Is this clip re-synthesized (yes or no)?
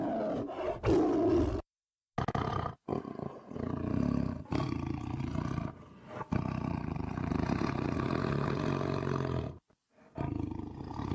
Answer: no